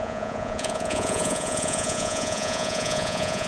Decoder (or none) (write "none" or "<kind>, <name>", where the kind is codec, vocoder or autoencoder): vocoder, Vocos